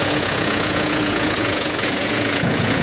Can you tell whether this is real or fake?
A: fake